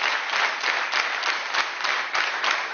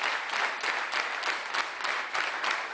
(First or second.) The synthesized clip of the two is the first